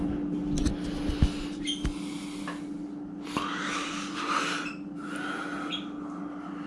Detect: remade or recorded recorded